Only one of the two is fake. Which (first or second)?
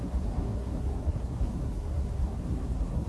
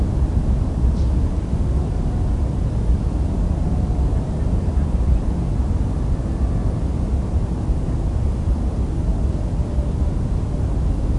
first